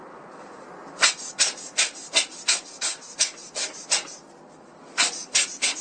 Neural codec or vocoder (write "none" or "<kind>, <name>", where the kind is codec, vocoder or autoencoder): none